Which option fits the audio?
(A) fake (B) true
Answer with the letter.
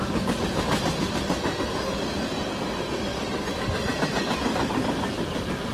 B